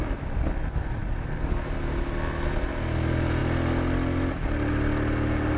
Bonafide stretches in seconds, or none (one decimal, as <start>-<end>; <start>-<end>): 0.0-5.6